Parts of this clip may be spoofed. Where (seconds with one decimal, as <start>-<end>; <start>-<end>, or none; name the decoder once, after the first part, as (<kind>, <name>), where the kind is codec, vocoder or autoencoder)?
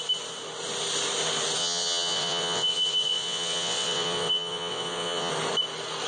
1.6-5.3 (vocoder, WaveNeXt)